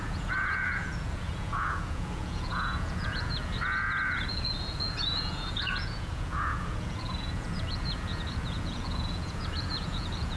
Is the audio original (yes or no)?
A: no